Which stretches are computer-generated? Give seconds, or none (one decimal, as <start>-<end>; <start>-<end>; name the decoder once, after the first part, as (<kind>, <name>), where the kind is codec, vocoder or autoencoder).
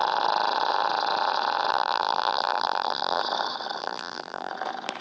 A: 1.7-3.2 (vocoder, BigVGAN v2); 3.8-4.5